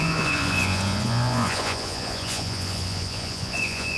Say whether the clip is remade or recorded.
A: remade